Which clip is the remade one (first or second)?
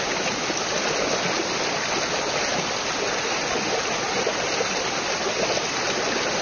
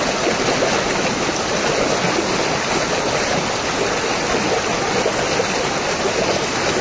first